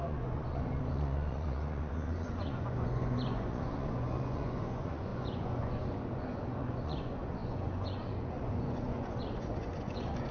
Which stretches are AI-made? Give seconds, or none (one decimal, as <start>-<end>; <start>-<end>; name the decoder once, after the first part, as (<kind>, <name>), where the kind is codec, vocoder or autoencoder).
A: 0.0-10.3 (vocoder, Vocos)